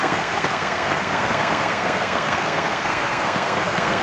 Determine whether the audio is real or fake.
fake